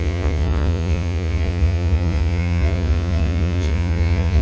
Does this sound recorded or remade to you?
remade